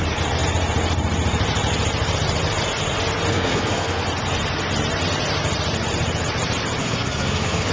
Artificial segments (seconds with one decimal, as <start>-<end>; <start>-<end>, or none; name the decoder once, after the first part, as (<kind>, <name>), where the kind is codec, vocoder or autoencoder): 3.3-4.0 (codec, SNAC); 6.8-7.7